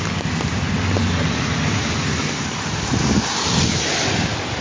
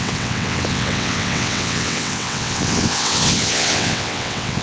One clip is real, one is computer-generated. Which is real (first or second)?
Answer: first